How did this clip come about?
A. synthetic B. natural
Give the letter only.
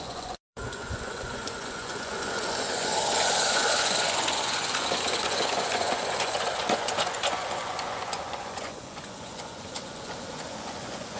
A